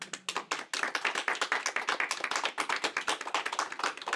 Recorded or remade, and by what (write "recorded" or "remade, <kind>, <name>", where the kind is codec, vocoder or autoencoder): recorded